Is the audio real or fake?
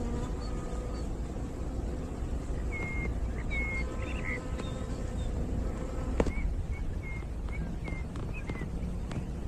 real